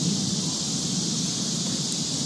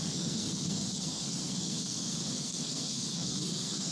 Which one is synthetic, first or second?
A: second